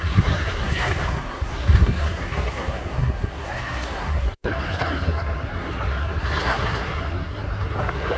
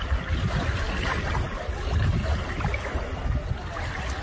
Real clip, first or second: second